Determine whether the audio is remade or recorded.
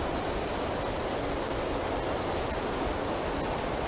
recorded